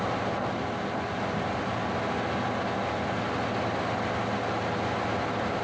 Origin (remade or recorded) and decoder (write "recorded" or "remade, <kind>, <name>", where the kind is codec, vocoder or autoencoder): recorded